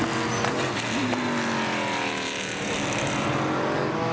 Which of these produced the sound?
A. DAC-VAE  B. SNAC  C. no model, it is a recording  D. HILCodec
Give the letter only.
C